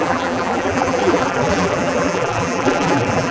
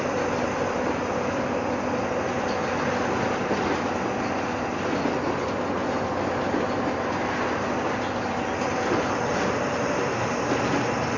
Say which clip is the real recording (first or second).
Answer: second